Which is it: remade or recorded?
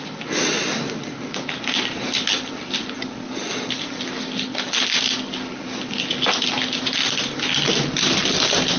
recorded